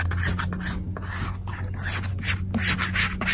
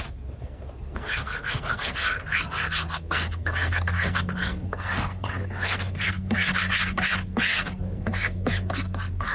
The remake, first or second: second